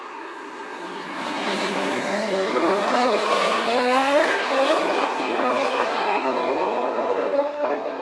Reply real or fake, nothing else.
fake